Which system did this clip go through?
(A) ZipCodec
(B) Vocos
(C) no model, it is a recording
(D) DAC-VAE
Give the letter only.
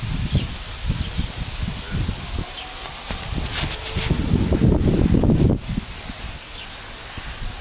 C